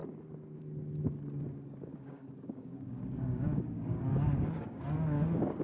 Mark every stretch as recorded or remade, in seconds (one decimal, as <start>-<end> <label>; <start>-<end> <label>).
0.0-1.9 recorded; 1.9-5.6 remade